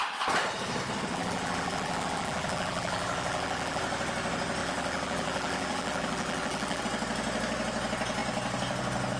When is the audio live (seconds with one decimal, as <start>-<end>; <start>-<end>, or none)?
0.0-1.1; 3.8-4.6; 6.8-9.2